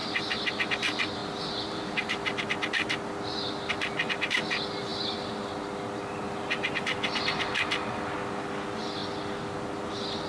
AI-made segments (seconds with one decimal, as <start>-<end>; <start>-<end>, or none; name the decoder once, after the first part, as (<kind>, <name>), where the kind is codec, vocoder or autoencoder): none